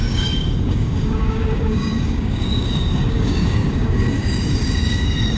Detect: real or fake fake